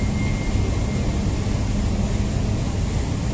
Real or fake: real